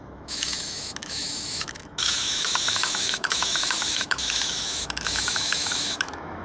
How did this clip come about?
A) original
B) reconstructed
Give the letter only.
B